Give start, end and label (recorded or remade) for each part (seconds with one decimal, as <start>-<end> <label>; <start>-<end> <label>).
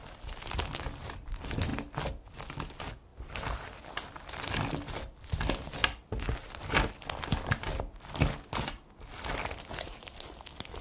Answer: 0.0-10.8 recorded